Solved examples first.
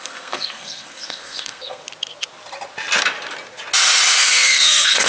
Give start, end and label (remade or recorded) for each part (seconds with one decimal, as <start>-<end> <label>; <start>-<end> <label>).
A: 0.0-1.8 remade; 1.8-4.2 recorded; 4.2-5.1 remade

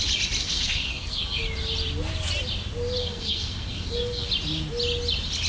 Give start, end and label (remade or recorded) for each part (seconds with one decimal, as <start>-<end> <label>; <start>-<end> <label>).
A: 0.0-0.4 recorded; 0.4-1.4 remade; 1.4-3.0 recorded; 3.0-4.3 remade; 4.3-5.5 recorded

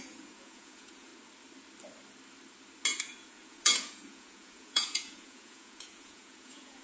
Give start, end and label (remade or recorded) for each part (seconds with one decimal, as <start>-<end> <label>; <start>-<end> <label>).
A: 0.0-1.1 remade; 1.1-3.0 recorded; 3.0-6.8 remade

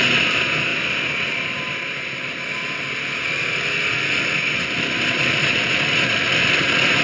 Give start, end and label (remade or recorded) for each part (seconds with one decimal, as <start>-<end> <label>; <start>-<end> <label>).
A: 0.0-7.0 recorded

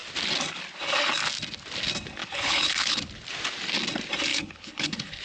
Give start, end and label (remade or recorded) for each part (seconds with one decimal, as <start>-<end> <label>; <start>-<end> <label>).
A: 0.0-2.2 recorded; 2.2-3.0 remade; 3.0-4.3 recorded; 4.3-5.2 remade

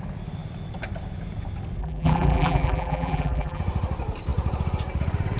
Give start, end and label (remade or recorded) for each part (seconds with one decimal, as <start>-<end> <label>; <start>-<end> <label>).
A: 0.0-1.8 recorded; 1.8-3.6 remade; 3.6-5.4 recorded

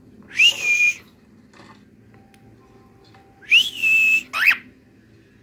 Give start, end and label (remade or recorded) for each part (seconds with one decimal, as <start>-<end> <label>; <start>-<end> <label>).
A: 0.0-5.4 recorded